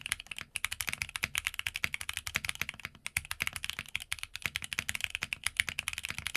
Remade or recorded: recorded